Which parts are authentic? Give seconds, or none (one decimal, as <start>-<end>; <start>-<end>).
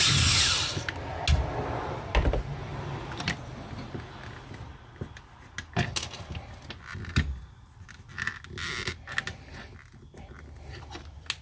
0.0-11.4